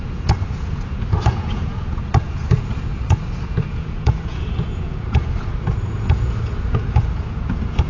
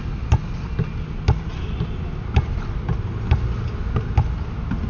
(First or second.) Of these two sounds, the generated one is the first